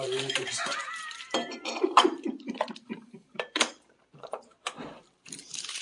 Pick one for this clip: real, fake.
fake